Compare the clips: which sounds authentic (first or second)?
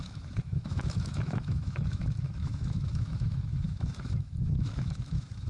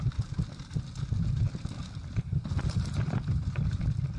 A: second